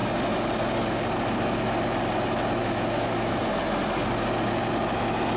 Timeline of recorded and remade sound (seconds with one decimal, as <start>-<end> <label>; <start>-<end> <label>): 0.0-2.6 recorded; 2.6-3.4 remade; 3.4-5.4 recorded